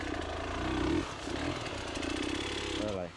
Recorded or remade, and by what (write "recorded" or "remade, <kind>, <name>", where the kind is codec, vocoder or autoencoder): recorded